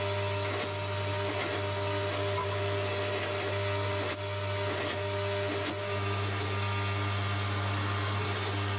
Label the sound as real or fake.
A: real